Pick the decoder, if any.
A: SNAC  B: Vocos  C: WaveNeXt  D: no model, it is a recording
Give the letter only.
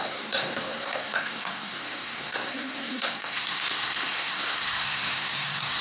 A